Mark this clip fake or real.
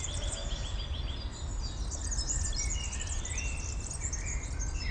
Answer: real